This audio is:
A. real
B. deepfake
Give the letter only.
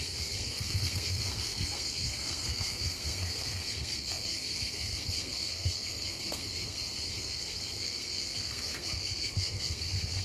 B